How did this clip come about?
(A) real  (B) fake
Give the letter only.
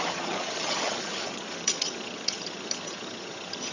B